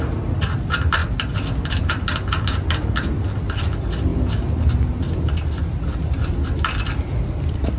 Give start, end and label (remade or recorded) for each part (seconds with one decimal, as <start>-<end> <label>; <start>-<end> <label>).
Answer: 0.0-7.8 recorded